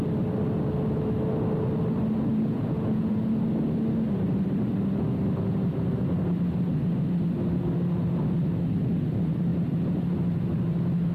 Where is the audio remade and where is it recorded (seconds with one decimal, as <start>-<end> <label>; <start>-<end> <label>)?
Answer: 0.0-2.3 recorded; 2.3-3.2 remade; 3.2-11.1 recorded